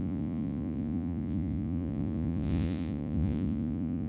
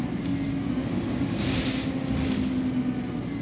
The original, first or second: second